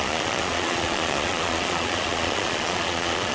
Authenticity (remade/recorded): remade